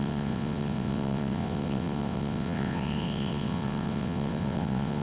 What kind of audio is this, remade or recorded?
remade